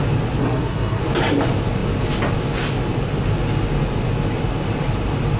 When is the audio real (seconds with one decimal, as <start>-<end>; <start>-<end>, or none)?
0.0-0.4; 1.0-5.4